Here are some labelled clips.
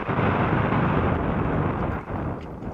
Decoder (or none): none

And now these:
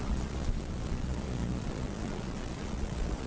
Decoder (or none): vocoder, Vocos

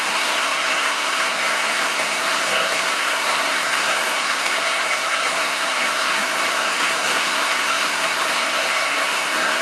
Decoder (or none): codec, SNAC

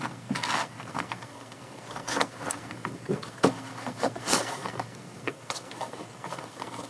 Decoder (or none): codec, SNAC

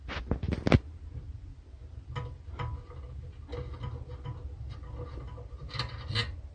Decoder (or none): none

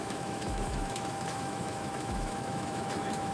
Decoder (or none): autoencoder, DAC-VAE